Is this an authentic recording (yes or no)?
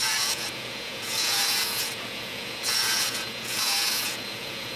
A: no